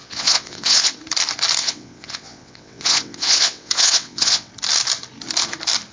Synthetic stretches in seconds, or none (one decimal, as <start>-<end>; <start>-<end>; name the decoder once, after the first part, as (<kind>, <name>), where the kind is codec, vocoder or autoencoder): 0.0-0.9 (vocoder, WaveNeXt); 1.6-4.5